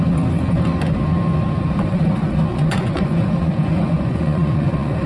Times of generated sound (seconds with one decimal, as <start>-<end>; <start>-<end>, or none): 2.5-5.1